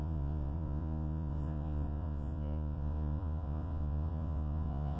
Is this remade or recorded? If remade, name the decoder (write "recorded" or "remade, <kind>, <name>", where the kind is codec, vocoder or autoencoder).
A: remade, vocoder, Vocos